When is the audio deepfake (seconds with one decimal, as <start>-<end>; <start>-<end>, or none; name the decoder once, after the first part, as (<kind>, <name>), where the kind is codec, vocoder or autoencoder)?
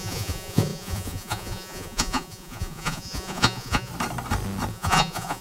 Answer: 0.0-3.9 (vocoder, Vocos); 4.7-5.4